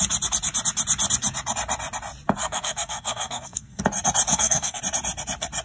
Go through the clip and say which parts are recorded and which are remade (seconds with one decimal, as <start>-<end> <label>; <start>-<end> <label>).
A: 0.0-2.4 recorded; 2.4-3.8 remade; 3.8-4.3 recorded; 4.3-4.8 remade; 4.8-5.6 recorded